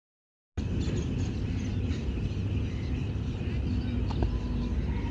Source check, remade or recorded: recorded